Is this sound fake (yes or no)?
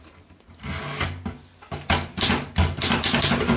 no